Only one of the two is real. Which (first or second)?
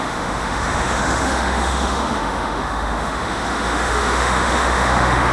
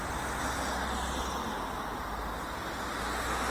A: second